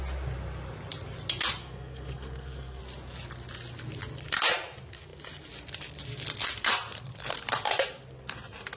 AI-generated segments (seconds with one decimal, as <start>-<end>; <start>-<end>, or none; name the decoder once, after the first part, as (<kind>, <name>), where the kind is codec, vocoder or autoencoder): 1.6-2.8 (codec, SNAC)